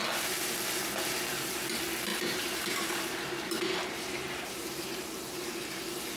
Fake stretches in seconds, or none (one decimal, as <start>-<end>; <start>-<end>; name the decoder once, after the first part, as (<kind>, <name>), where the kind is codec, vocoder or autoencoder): 2.1-5.8 (vocoder, BigVGAN v2)

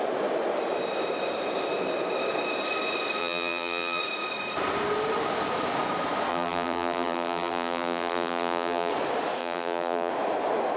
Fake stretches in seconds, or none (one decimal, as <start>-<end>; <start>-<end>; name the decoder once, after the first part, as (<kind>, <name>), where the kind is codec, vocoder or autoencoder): 3.2-4.0 (vocoder, BigVGAN v2); 6.3-8.9; 9.4-10.1

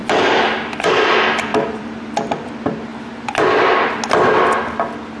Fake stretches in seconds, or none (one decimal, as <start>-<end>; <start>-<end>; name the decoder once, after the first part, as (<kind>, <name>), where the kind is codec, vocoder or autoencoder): 0.0-1.1 (vocoder, BigVGAN v2); 1.5-2.5; 2.9-3.9

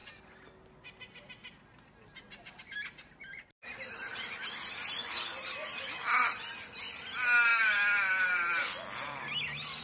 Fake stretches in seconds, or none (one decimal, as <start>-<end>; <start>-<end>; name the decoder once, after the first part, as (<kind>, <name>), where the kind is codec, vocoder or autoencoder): 4.1-6.2 (vocoder, BigVGAN v2); 7.5-8.7

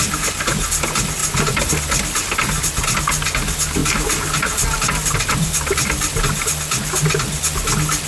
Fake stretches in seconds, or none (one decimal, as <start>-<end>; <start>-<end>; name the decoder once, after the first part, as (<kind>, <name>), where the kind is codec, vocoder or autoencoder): 1.2-1.7 (vocoder, BigVGAN v2); 3.8-6.2

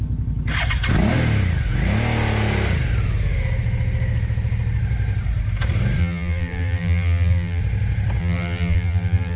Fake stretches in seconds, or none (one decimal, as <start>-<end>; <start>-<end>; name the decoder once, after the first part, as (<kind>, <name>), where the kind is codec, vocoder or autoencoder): 6.0-7.6 (vocoder, BigVGAN v2); 8.2-9.4